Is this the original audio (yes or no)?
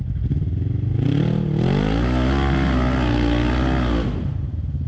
yes